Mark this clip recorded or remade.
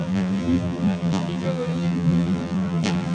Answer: remade